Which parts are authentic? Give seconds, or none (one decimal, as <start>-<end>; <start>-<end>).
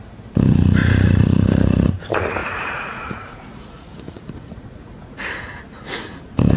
0.0-0.8; 2.0-2.4; 5.4-6.6